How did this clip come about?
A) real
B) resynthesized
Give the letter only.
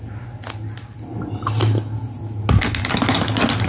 A